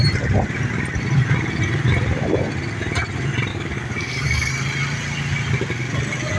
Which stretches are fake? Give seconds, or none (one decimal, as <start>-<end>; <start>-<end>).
3.5-4.5